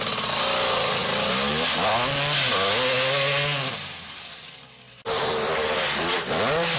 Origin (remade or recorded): recorded